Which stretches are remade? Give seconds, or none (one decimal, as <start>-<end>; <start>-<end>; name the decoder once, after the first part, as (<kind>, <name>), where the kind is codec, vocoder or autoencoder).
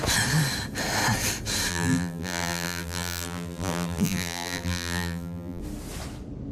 1.7-5.6 (vocoder, BigVGAN v2)